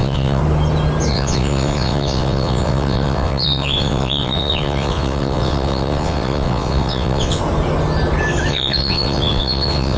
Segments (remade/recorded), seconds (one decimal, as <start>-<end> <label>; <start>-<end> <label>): 0.0-0.4 remade; 0.4-1.1 recorded; 1.1-7.4 remade; 7.4-8.5 recorded; 8.5-10.0 remade